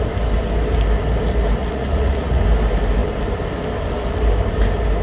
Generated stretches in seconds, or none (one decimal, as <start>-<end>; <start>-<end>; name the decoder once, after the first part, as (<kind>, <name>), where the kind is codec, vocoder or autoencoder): 1.6-2.4 (vocoder, Vocos)